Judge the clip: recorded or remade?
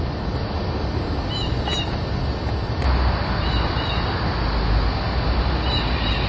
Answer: recorded